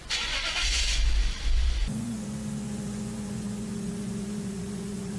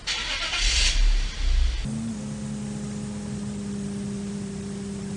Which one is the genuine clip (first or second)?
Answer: second